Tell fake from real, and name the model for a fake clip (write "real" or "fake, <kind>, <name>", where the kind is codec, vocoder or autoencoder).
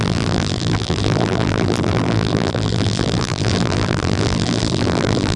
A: fake, vocoder, BigVGAN v2